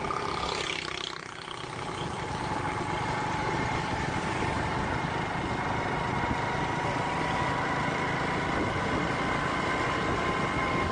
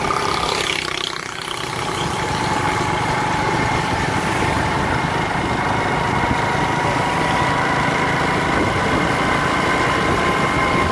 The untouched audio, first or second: first